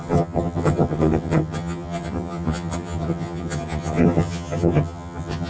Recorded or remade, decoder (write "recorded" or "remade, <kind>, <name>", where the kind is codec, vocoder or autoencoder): remade, vocoder, HiFi-GAN